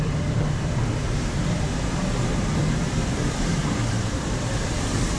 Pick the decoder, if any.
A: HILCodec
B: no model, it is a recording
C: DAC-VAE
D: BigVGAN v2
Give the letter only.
D